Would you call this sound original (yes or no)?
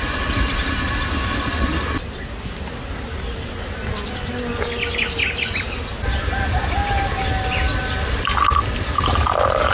yes